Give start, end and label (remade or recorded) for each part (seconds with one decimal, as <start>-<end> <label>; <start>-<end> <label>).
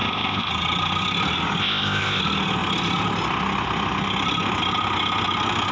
0.0-0.5 remade; 0.5-1.6 recorded; 1.6-2.2 remade; 2.2-5.7 recorded